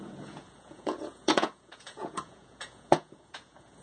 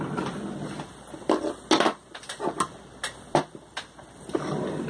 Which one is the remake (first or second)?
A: first